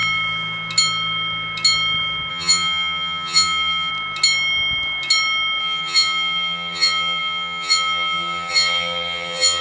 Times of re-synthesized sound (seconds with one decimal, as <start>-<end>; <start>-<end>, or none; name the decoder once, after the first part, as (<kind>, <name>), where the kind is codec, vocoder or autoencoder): 2.3-3.9 (vocoder, HiFi-GAN); 5.6-9.6